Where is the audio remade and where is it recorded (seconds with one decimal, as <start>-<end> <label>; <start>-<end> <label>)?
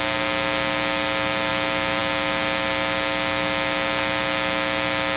0.0-5.2 recorded